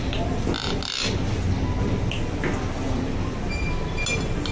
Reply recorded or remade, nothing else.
recorded